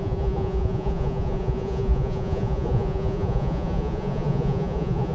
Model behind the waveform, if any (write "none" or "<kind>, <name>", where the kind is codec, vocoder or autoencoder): vocoder, Vocos